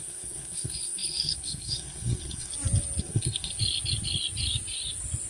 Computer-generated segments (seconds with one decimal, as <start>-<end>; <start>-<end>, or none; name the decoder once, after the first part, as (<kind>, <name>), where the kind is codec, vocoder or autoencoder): 0.0-2.5 (codec, SNAC); 3.0-3.5